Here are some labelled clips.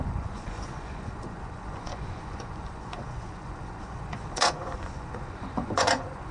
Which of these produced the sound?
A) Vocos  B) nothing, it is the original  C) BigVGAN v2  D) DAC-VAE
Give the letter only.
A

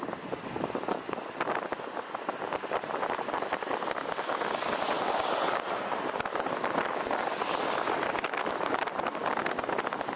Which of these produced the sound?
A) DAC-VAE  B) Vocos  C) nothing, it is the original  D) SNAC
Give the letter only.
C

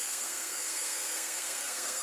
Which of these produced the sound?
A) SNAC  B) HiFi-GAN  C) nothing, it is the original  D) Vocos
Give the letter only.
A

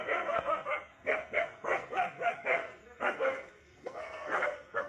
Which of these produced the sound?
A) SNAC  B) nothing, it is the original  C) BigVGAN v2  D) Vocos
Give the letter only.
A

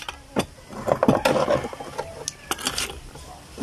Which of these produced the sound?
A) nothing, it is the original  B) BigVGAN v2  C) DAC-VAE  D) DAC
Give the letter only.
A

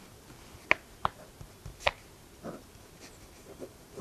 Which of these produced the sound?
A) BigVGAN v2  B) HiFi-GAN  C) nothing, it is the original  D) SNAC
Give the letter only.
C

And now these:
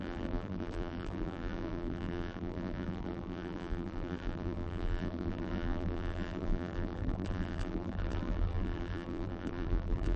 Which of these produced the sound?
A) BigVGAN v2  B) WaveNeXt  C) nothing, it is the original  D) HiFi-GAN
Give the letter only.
A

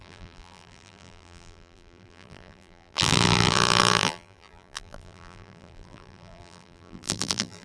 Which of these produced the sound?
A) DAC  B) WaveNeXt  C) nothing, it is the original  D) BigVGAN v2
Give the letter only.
D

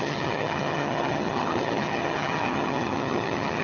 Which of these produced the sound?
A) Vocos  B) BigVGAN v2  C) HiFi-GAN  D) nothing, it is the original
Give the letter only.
C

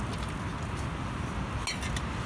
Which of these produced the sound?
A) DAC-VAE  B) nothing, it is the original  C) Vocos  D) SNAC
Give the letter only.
B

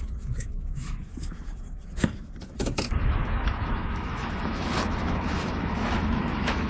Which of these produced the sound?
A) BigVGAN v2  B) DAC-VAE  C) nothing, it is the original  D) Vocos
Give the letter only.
B